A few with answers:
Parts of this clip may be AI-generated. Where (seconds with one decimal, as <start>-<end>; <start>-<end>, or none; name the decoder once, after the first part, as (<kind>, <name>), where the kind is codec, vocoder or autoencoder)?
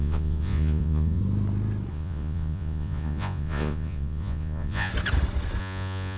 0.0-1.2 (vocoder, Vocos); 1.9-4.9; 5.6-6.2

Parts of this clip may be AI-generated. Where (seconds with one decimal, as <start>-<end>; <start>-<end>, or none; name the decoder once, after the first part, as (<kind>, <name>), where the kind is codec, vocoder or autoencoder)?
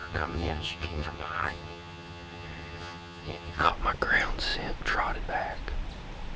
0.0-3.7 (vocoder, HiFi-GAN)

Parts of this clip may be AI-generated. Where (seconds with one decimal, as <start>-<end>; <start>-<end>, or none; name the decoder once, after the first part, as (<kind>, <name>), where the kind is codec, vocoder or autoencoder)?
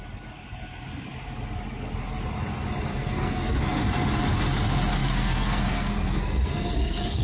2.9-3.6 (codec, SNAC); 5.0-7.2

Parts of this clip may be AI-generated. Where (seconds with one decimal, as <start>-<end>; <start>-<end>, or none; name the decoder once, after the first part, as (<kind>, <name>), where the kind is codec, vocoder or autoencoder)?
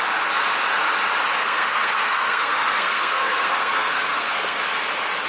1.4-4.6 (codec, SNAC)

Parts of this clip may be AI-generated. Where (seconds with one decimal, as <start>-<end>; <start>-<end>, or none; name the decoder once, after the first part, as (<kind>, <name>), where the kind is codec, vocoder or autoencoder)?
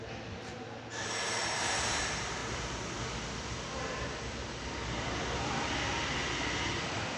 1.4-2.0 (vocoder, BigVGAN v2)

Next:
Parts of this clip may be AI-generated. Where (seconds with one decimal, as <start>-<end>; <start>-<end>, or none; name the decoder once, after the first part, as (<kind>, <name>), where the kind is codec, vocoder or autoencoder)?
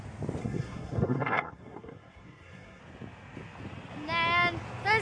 0.4-2.8 (codec, SNAC)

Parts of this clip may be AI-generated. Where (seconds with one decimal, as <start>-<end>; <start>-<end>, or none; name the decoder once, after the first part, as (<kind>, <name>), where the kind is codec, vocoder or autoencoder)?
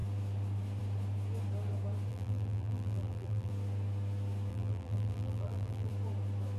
2.1-3.5 (vocoder, BigVGAN v2); 4.5-5.9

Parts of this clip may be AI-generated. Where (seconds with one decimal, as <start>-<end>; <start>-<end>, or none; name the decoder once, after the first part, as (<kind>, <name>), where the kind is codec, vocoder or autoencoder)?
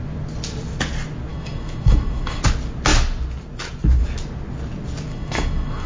1.3-2.4 (autoencoder, DAC-VAE); 5.1-5.9